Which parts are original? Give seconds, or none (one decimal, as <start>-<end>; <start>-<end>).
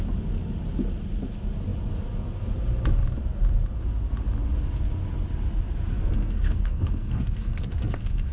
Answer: 0.0-5.9